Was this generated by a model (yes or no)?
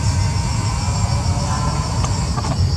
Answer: no